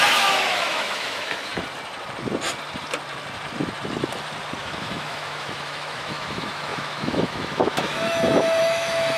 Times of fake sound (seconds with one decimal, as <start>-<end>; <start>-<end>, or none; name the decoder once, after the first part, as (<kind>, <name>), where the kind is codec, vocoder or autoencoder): 0.0-1.5 (autoencoder, DAC-VAE); 4.6-9.2